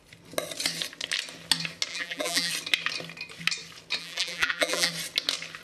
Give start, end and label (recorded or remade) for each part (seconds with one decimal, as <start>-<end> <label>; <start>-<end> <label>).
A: 0.0-1.9 recorded; 1.9-2.5 remade; 2.5-4.0 recorded; 4.0-4.9 remade; 4.9-5.6 recorded